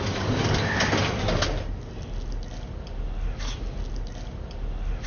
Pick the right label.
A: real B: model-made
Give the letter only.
A